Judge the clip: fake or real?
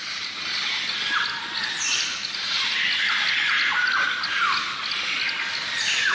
real